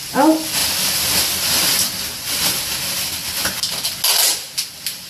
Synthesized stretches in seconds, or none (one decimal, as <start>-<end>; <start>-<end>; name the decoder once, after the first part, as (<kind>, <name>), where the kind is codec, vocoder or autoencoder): none